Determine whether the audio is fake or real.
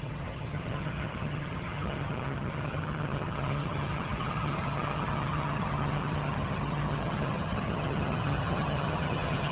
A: fake